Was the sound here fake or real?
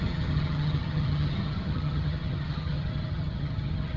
fake